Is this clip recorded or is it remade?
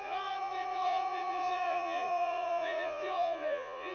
remade